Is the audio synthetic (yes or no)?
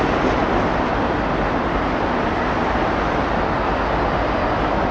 no